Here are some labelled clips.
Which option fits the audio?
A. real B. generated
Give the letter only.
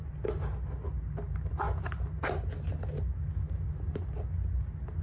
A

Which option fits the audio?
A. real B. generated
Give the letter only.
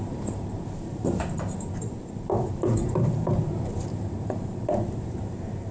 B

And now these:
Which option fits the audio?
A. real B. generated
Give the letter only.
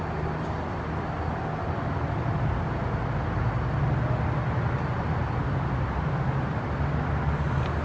A